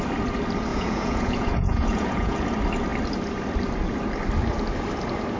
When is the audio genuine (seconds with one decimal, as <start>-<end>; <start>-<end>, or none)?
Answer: 0.0-0.7; 2.5-5.4